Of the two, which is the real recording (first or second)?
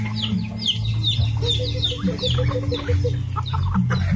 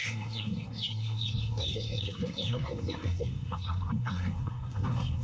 first